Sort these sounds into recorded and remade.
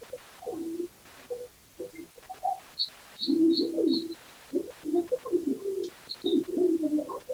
recorded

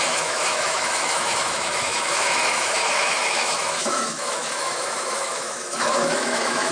remade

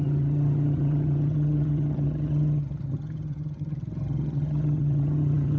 remade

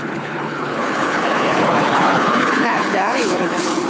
remade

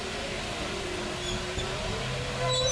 recorded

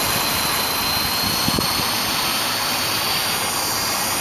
recorded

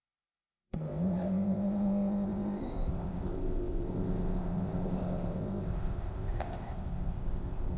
remade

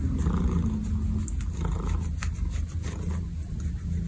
recorded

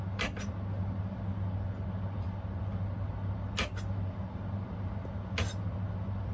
recorded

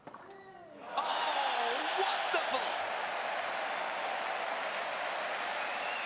recorded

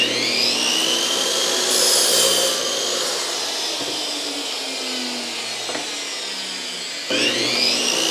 recorded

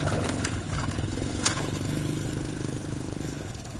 remade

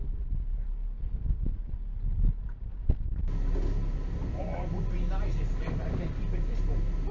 recorded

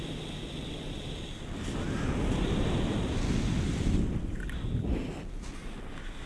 recorded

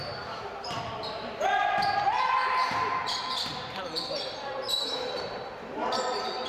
remade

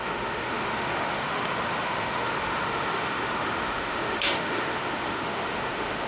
remade